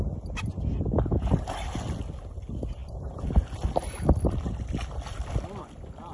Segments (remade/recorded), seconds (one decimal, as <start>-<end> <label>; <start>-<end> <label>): 0.0-2.8 recorded; 2.8-4.5 remade; 4.5-6.1 recorded